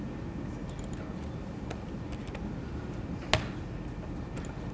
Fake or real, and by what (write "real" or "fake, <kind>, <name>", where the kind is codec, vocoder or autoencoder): real